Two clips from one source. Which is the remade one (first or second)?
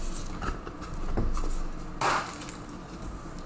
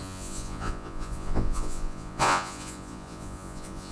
second